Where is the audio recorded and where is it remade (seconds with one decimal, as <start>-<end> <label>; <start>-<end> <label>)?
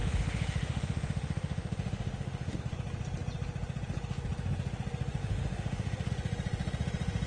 0.0-2.6 remade; 2.6-5.2 recorded; 5.2-6.1 remade; 6.1-7.3 recorded